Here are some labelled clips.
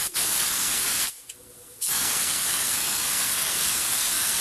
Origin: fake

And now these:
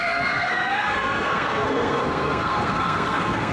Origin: fake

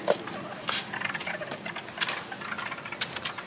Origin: real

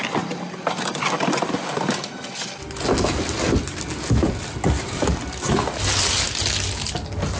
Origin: real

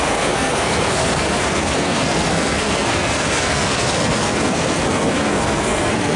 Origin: fake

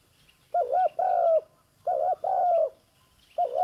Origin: real